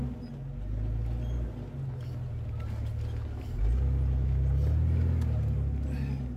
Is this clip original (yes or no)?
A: yes